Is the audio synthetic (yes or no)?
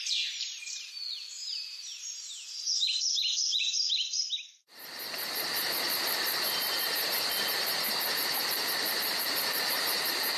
yes